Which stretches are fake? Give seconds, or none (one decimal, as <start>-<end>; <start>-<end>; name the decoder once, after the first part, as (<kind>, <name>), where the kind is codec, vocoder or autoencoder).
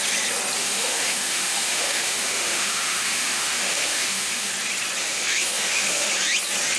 0.6-4.5 (autoencoder, DAC-VAE); 5.0-6.1